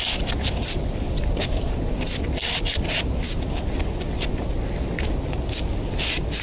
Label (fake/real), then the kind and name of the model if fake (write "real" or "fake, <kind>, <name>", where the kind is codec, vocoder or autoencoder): real